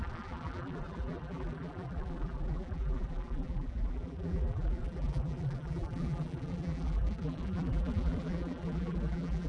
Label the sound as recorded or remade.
remade